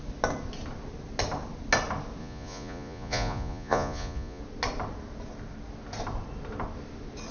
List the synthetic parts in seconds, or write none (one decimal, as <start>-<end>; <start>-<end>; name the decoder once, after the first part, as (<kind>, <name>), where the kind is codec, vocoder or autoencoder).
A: 2.2-4.4 (vocoder, Vocos)